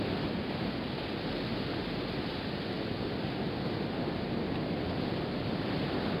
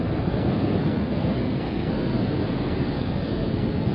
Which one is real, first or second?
first